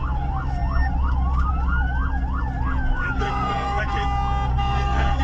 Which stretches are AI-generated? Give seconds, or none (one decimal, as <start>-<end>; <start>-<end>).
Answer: 3.3-3.8; 4.5-5.2